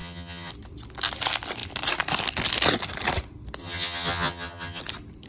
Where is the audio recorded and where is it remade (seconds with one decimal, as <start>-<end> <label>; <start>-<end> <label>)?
0.0-0.5 remade; 0.5-3.6 recorded; 3.6-4.8 remade; 4.8-5.3 recorded